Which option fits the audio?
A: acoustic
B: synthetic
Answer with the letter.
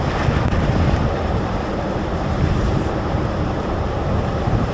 B